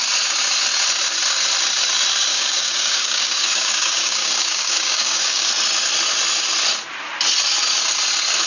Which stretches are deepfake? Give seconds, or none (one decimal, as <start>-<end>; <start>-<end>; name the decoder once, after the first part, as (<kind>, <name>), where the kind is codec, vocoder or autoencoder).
2.3-5.5 (codec, DAC)